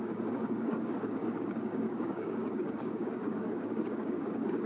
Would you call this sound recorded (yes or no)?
no